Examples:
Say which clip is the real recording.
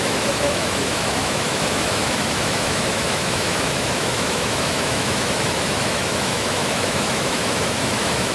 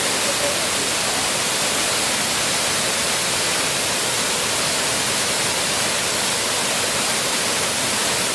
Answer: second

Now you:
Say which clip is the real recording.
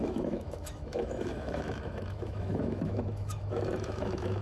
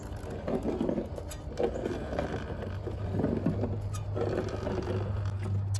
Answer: second